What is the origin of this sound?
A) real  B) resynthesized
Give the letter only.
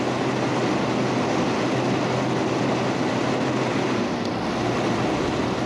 A